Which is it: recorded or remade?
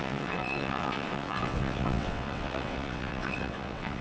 remade